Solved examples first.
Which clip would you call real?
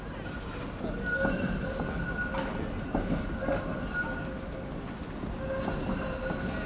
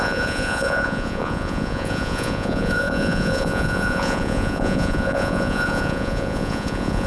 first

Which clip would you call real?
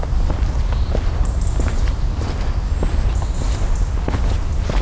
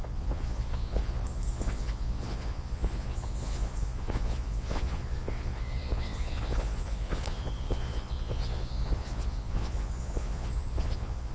first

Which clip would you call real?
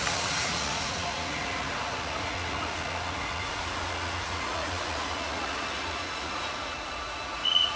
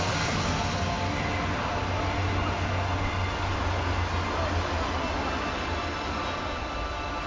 second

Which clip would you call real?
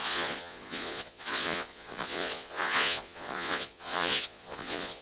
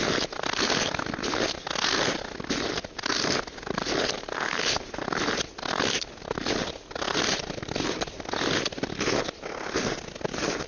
second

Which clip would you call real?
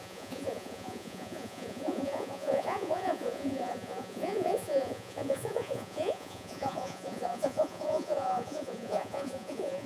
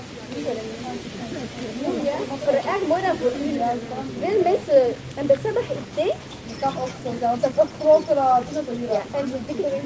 second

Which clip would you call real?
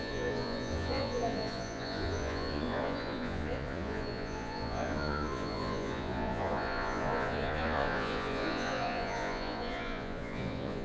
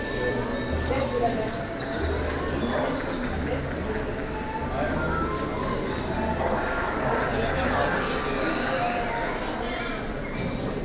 second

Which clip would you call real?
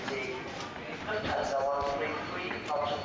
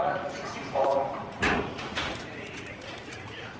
first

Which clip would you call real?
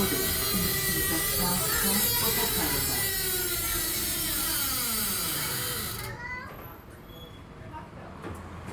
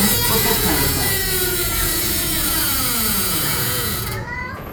first